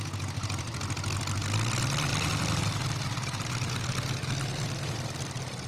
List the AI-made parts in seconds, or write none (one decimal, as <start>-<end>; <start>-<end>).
none